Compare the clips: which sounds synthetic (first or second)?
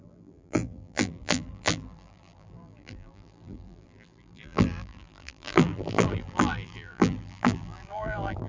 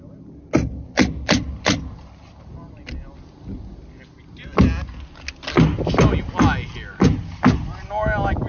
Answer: first